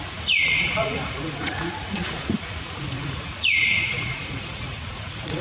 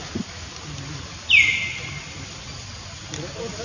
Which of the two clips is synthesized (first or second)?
first